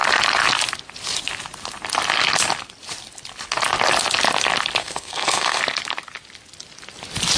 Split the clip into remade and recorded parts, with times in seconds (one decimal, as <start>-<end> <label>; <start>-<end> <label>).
0.0-4.8 recorded; 4.8-5.6 remade; 5.6-7.4 recorded